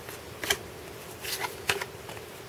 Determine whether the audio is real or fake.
real